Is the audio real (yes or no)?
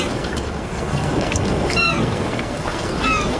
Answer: no